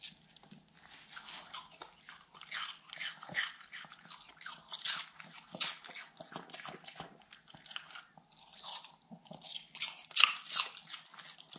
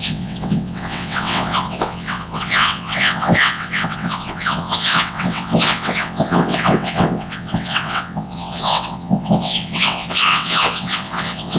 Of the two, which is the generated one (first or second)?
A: second